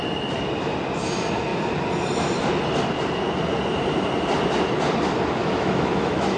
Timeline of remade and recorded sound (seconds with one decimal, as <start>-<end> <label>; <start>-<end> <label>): 0.0-5.4 recorded; 5.4-6.4 remade